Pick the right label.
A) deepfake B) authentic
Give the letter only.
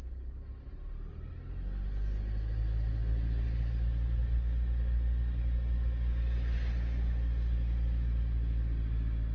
B